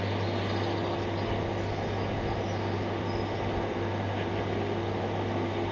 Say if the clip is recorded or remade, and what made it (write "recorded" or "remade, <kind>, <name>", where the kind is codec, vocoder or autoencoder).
recorded